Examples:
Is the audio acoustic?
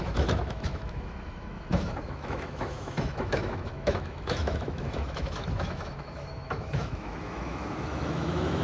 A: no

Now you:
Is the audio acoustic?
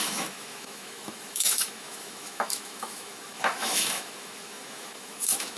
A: no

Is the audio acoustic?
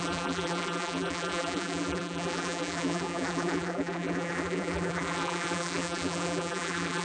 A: no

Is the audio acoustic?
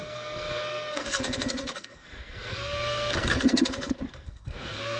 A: no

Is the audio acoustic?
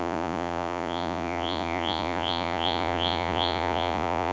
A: no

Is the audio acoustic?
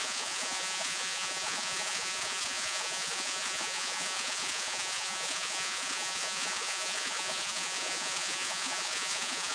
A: no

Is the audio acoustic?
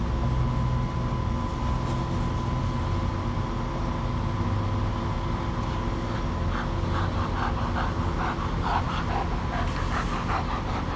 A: yes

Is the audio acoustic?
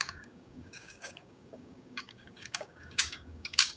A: no